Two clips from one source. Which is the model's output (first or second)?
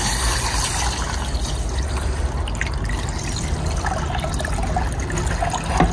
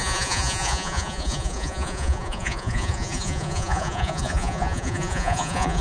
second